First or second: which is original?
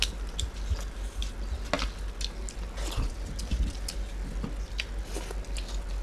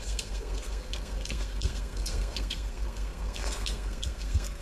first